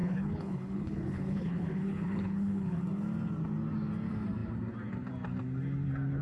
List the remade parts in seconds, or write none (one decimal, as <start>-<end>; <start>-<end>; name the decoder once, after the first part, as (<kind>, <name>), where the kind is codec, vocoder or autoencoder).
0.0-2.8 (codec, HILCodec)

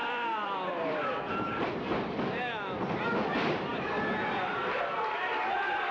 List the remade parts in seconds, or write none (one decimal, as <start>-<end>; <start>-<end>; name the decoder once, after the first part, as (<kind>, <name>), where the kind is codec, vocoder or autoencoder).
0.0-1.8 (vocoder, BigVGAN v2); 3.7-4.4

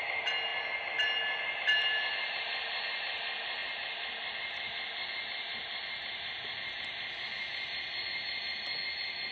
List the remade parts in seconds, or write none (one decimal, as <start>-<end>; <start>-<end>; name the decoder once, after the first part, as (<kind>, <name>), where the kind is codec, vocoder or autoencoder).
none

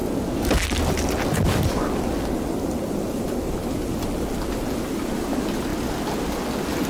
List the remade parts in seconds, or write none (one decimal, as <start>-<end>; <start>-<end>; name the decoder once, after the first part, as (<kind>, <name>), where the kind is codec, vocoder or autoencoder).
none